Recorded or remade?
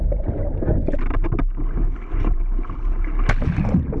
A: recorded